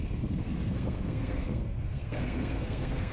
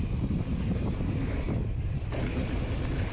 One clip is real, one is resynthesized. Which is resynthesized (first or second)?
first